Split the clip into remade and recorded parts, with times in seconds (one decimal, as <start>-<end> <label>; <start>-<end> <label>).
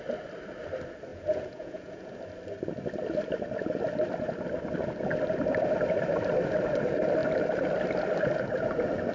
0.0-1.1 recorded; 1.1-2.1 remade; 2.1-9.1 recorded